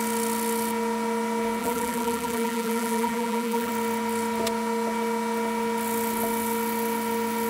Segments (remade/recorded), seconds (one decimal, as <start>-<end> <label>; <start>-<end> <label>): 0.0-1.6 recorded; 1.6-3.7 remade; 3.7-7.5 recorded